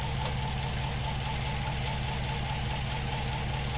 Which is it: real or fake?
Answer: real